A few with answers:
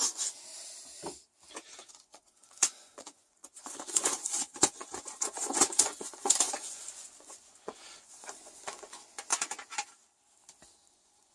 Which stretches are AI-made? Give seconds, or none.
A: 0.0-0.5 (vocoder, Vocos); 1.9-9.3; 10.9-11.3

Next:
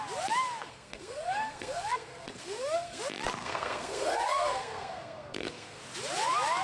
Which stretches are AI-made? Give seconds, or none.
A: 0.7-3.0 (codec, SNAC); 3.4-5.8

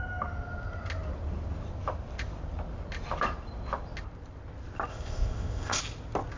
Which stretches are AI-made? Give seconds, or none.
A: 4.9-5.8 (codec, ZipCodec)

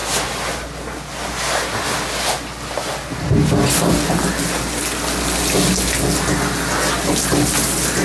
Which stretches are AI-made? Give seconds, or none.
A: none

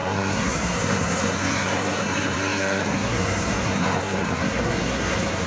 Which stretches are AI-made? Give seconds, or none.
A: 0.0-5.5 (codec, SNAC)

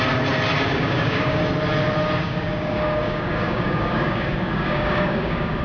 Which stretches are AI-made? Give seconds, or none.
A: 0.7-1.4 (codec, DAC); 2.2-5.6